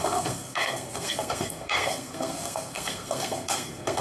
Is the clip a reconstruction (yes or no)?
yes